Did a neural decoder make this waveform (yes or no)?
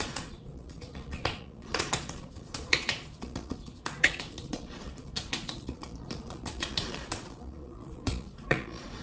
yes